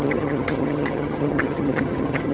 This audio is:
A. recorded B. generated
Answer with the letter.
B